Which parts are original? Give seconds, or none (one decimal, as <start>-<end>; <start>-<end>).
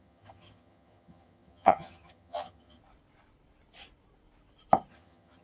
2.8-4.9